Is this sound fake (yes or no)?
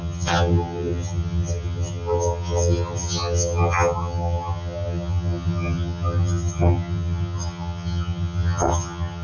yes